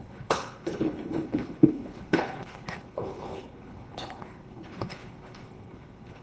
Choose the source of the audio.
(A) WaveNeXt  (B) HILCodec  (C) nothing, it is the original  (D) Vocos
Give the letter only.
B